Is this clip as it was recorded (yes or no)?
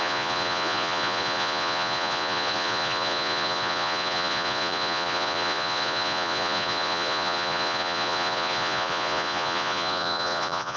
no